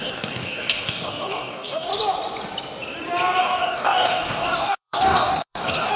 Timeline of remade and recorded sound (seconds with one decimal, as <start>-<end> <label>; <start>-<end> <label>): 0.0-1.9 remade; 1.9-3.4 recorded; 3.4-6.0 remade